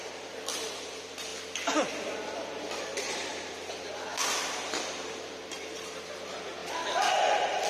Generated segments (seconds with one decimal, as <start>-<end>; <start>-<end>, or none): 0.0-1.3; 2.8-3.3; 5.7-7.7